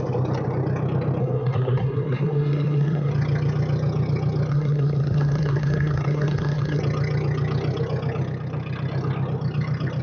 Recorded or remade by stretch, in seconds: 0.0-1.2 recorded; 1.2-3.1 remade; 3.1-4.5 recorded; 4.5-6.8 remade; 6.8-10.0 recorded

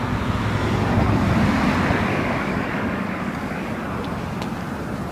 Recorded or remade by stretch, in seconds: 0.0-2.1 recorded; 2.1-3.7 remade; 3.7-5.1 recorded

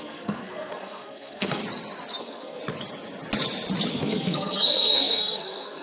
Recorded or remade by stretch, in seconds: 0.0-1.6 remade; 1.6-2.2 recorded; 2.2-2.6 remade; 2.6-3.9 recorded; 3.9-5.8 remade